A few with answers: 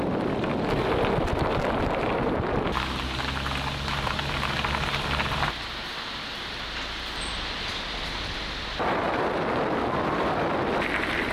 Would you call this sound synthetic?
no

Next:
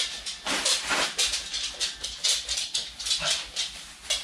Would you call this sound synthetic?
no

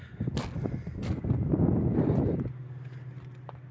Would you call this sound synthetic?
no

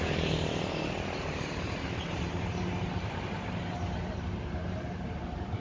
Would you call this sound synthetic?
yes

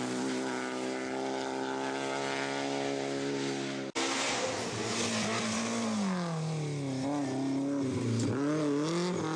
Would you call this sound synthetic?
no